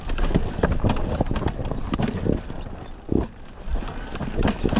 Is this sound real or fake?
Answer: real